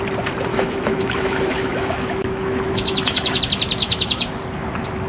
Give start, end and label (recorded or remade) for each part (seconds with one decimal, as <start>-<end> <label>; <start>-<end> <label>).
0.0-0.5 recorded; 0.5-3.4 remade; 3.4-3.8 recorded; 3.8-4.4 remade; 4.4-5.1 recorded